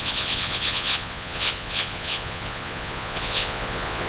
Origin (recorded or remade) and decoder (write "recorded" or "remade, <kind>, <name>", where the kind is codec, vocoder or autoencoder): remade, vocoder, Vocos